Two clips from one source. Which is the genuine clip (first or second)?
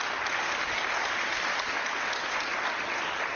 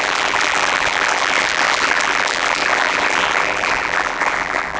first